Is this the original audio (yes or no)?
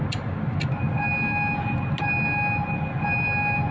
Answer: yes